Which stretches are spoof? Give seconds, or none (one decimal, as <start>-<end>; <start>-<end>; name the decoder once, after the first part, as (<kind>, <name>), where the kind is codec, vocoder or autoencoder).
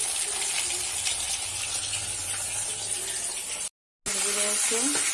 none